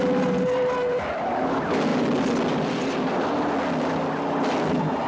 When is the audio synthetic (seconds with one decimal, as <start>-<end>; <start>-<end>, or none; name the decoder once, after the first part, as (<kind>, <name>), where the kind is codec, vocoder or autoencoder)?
none